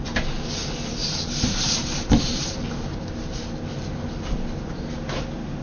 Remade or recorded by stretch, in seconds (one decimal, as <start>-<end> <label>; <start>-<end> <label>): 0.0-1.0 recorded; 1.0-3.4 remade; 3.4-5.6 recorded